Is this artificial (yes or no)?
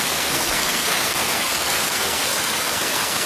yes